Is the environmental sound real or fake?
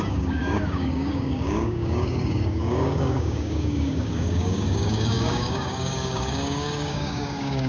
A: fake